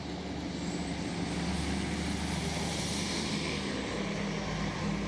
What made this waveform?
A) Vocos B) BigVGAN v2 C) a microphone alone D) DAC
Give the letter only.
C